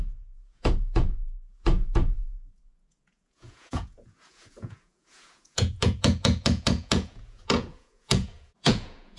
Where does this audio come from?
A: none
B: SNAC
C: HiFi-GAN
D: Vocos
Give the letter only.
D